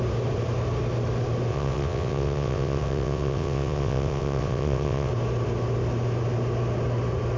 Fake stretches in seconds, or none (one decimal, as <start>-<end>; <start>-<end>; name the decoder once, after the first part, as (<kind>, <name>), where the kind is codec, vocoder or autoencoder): 1.5-5.1 (vocoder, WaveNeXt)